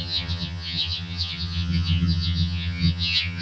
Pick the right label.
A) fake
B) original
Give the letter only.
A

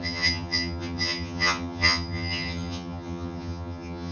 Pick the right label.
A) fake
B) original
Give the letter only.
A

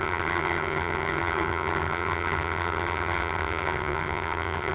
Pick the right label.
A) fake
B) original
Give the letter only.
A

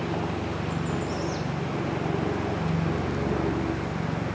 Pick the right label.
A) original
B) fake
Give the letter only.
A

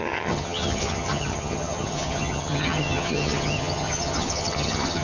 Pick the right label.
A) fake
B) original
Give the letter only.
A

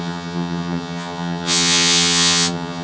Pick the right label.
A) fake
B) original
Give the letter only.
A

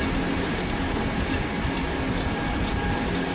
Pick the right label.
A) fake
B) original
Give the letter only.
B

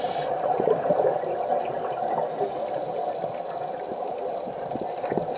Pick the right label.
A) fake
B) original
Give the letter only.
B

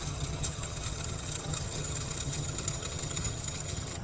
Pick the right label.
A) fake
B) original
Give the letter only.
A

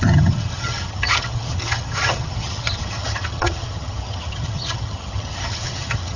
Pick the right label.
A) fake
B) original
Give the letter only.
A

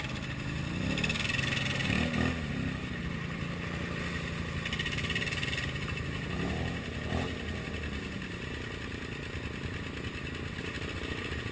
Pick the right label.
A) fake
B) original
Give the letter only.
B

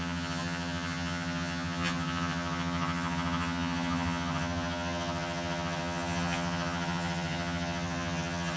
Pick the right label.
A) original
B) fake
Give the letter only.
B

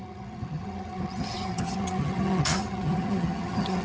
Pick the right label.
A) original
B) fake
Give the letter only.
B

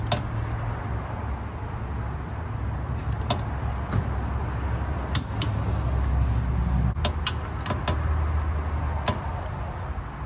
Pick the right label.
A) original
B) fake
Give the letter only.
A